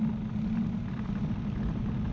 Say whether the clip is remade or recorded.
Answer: recorded